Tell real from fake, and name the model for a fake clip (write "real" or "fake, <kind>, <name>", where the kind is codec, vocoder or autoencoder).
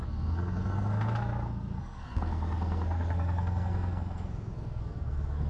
fake, codec, SNAC